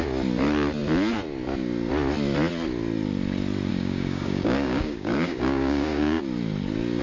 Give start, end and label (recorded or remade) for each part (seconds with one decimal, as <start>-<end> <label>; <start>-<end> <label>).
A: 0.0-3.7 recorded; 3.7-6.2 remade; 6.2-7.0 recorded